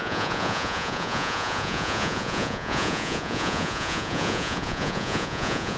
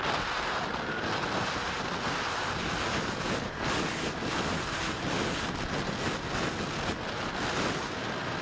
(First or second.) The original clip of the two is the second